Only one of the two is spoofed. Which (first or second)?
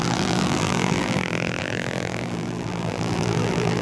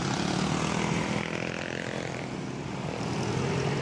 first